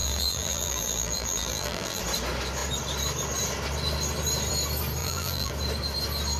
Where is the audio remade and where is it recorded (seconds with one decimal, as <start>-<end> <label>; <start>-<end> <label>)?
0.0-2.0 remade; 2.0-5.0 recorded; 5.0-5.5 remade; 5.5-6.4 recorded